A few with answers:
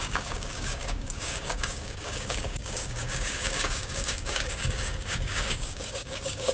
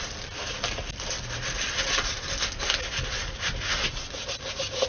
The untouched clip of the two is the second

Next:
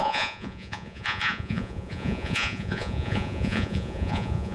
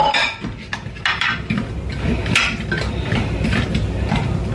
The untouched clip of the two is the second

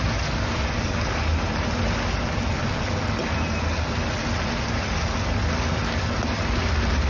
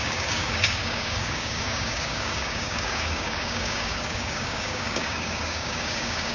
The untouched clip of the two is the first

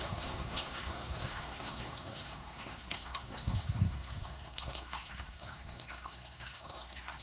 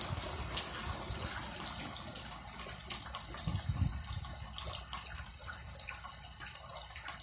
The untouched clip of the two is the second